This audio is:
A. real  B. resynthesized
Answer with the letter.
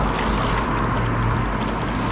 A